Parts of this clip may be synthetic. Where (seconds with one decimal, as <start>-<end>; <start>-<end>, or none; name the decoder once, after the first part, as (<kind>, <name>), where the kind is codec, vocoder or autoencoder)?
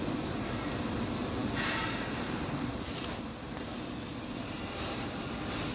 0.0-3.7 (vocoder, BigVGAN v2); 4.2-5.7